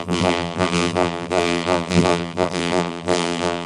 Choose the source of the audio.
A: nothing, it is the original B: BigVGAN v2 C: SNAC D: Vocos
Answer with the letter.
B